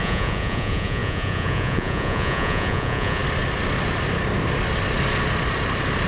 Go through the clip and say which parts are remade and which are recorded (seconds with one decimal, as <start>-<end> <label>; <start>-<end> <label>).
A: 0.0-3.2 remade; 3.2-6.1 recorded